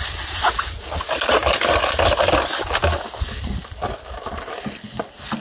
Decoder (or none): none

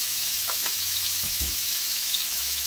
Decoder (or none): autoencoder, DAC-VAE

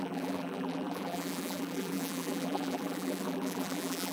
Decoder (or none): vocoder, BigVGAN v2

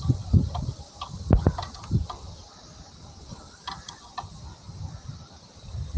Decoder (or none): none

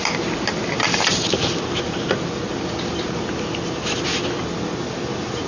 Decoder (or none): none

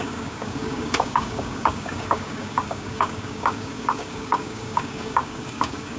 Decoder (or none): codec, DAC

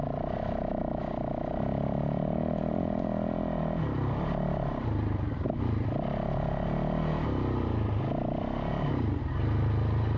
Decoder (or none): none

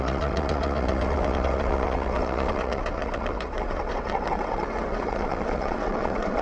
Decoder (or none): vocoder, WaveNeXt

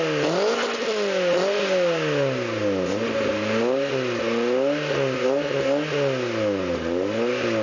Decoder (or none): none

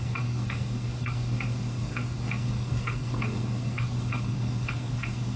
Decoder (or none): codec, SNAC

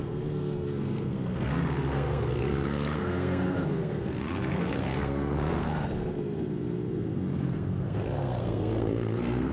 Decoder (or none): codec, SNAC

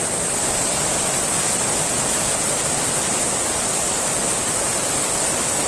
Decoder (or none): none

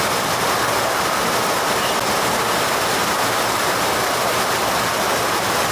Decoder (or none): none